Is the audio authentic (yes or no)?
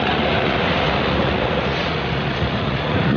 no